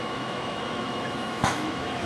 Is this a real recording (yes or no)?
no